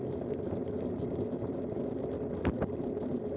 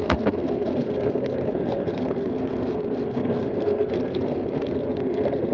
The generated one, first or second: second